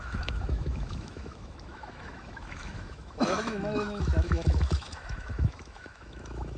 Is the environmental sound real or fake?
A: fake